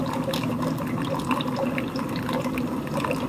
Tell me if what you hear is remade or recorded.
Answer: recorded